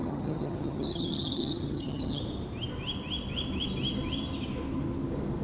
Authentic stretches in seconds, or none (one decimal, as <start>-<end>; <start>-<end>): 2.2-5.4